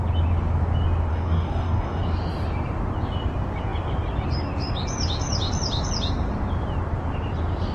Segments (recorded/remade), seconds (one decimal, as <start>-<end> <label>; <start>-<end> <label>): 0.0-1.1 recorded; 1.1-2.0 remade; 2.0-7.7 recorded